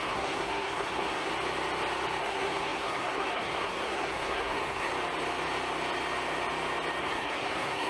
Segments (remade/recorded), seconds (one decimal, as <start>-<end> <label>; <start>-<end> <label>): 0.0-1.3 remade; 1.3-2.2 recorded; 2.2-4.9 remade; 4.9-7.0 recorded; 7.0-7.9 remade